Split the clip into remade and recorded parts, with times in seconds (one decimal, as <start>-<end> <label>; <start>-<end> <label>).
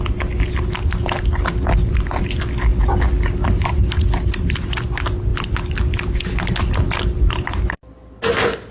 0.0-8.7 recorded